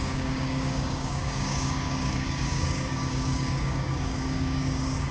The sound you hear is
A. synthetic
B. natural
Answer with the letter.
A